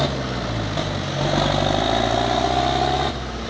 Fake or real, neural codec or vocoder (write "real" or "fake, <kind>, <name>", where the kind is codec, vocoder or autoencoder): real